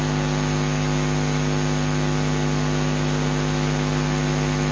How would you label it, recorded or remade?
recorded